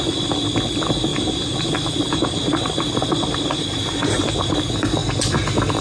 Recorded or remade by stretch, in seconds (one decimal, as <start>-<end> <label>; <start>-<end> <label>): 0.0-1.1 recorded; 1.1-4.6 remade; 4.6-5.8 recorded